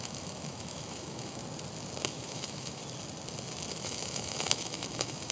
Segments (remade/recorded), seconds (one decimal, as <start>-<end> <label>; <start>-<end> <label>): 0.0-1.4 remade; 1.4-2.1 recorded; 2.1-2.8 remade; 2.8-3.7 recorded; 3.7-5.3 remade